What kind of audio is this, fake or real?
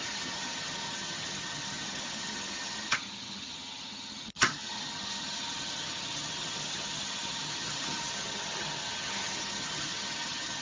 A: fake